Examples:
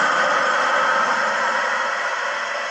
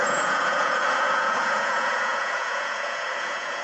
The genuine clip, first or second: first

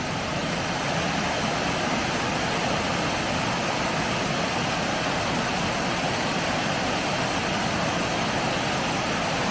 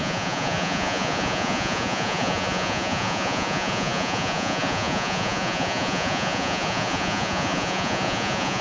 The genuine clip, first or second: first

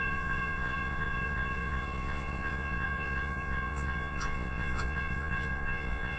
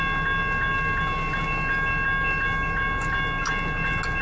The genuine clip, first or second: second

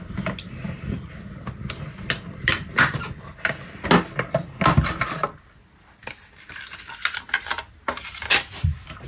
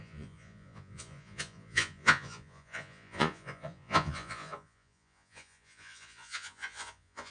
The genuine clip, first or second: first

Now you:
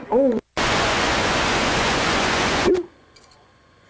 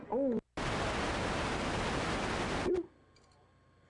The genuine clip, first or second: second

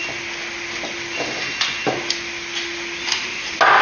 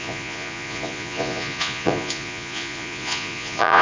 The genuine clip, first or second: first